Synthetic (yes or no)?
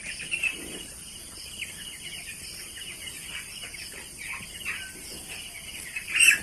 no